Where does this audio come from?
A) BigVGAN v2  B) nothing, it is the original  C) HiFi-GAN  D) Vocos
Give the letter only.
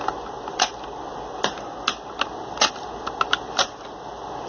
B